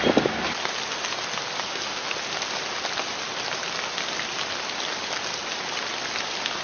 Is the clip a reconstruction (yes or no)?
no